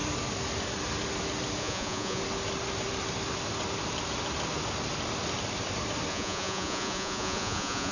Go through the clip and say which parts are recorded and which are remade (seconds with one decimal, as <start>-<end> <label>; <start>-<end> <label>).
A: 0.0-1.6 recorded; 1.6-2.2 remade; 2.2-6.1 recorded; 6.1-7.9 remade